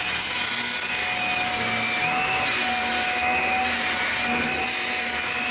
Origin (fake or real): real